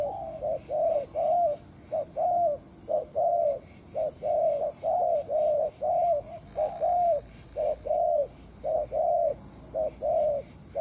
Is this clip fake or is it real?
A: real